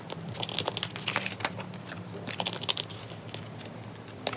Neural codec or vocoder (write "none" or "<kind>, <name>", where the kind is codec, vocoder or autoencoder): none